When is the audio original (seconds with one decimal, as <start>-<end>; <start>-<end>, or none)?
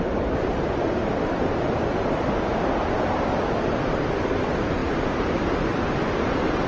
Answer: 0.0-6.7